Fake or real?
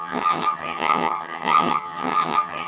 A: fake